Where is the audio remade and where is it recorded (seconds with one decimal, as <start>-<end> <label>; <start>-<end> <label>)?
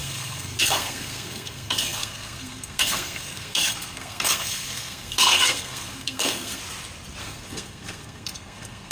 0.0-6.6 remade; 6.6-7.2 recorded; 7.2-8.9 remade